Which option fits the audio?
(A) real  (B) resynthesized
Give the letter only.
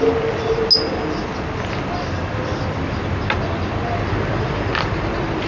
A